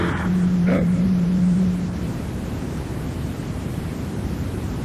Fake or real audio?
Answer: fake